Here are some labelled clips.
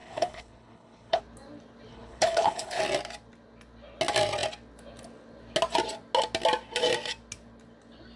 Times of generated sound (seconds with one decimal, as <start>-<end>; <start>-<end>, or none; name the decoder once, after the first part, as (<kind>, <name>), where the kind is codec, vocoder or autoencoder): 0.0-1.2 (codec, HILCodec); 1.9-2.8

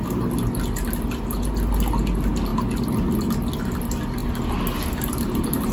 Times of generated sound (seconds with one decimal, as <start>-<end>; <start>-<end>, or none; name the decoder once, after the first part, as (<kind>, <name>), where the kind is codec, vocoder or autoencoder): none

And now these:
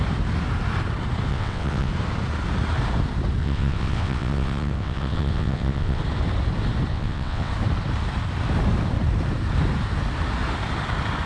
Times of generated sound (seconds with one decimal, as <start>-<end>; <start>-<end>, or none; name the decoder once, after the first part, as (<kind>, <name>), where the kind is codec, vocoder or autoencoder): 1.3-1.9 (vocoder, WaveNeXt); 3.4-6.0; 6.9-7.5

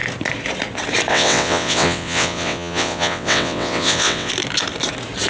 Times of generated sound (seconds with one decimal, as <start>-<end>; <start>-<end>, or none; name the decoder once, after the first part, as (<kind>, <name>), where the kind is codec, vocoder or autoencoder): 1.1-4.3 (vocoder, WaveNeXt)